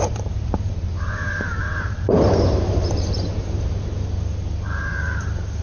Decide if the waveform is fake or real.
fake